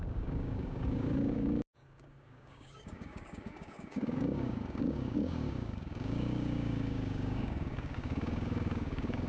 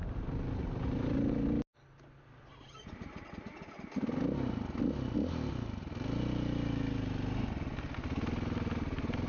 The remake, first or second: first